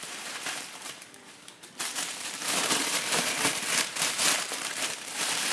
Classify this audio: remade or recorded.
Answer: remade